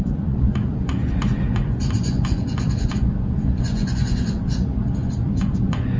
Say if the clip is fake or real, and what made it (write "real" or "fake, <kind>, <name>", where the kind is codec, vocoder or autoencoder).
fake, vocoder, Vocos